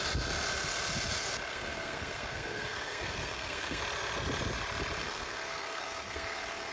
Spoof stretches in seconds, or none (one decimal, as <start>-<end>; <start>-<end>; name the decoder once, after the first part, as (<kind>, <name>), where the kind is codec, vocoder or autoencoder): 1.5-3.8 (codec, SNAC); 5.0-6.7